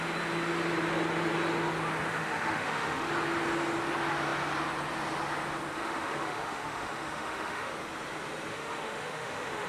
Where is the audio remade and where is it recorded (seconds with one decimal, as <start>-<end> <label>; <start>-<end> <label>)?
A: 0.0-2.1 recorded; 2.1-3.1 remade; 3.1-5.7 recorded; 5.7-7.7 remade; 7.7-8.5 recorded; 8.5-9.7 remade